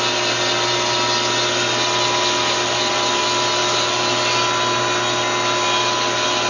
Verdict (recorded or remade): recorded